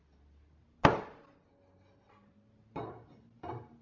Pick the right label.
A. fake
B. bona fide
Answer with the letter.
B